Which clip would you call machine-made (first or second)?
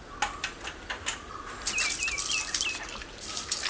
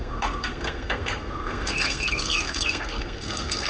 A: second